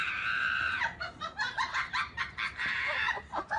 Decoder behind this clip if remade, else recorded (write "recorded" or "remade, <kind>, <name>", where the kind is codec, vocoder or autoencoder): remade, vocoder, BigVGAN v2